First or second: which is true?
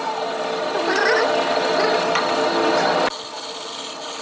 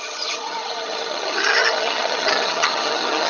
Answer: first